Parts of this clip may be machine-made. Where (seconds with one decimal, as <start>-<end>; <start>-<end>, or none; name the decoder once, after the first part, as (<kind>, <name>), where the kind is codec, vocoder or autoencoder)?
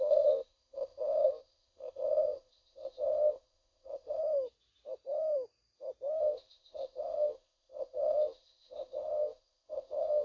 0.0-4.2 (codec, ZipCodec); 6.2-10.2